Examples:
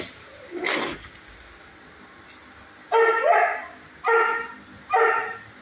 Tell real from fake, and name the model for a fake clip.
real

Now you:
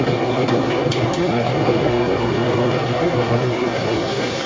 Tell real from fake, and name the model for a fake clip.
fake, codec, SNAC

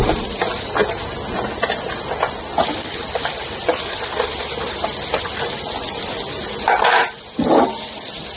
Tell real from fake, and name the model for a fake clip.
real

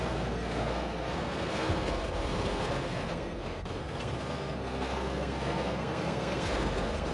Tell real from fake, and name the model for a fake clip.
fake, codec, SNAC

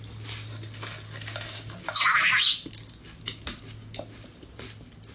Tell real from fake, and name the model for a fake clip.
real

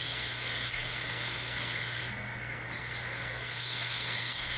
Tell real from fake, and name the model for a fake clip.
fake, codec, SNAC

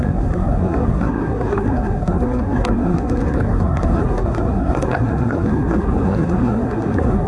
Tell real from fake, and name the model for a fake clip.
fake, codec, SNAC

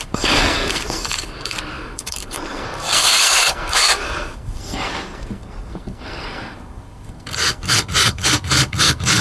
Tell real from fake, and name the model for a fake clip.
fake, codec, SNAC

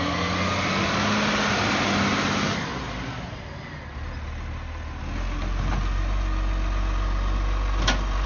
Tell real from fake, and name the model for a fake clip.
real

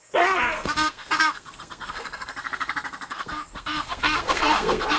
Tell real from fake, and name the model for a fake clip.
fake, codec, SNAC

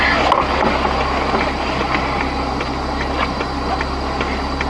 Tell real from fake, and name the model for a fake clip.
real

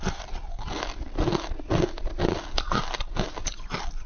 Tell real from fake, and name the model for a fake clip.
real